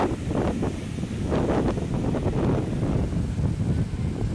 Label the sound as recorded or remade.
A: recorded